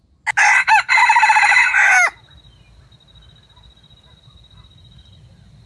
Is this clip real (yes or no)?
yes